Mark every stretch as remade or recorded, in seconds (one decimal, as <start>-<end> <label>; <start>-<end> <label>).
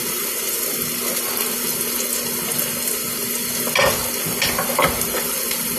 0.0-5.8 recorded